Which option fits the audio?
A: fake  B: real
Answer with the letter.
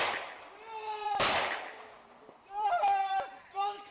A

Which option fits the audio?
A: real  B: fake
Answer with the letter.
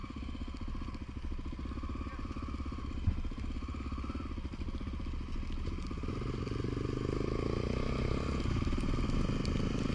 A